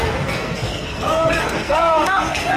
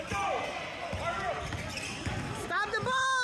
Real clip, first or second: second